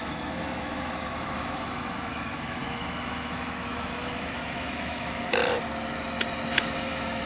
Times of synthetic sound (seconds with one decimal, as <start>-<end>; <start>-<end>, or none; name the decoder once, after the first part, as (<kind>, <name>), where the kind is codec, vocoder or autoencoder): 0.0-5.4 (autoencoder, DAC-VAE); 6.6-7.3